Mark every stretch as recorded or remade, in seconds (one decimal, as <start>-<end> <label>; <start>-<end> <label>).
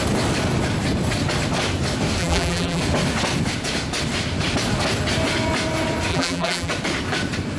0.0-2.2 recorded; 2.2-2.8 remade; 2.8-6.1 recorded; 6.1-6.7 remade; 6.7-7.6 recorded